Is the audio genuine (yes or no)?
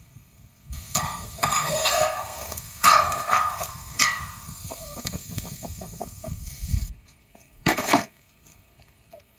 no